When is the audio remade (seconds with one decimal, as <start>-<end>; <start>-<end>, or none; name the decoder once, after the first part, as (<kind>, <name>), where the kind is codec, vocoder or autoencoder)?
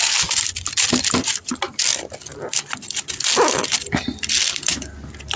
none